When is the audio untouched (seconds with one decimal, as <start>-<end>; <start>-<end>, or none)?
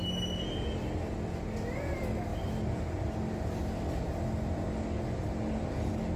0.0-6.2